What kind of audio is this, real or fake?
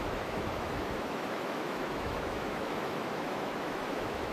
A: fake